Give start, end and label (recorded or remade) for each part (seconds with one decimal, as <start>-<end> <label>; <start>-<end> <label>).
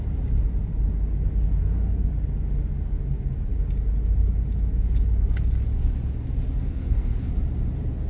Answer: 0.0-1.6 recorded; 1.6-2.1 remade; 2.1-6.7 recorded; 6.7-7.3 remade; 7.3-8.1 recorded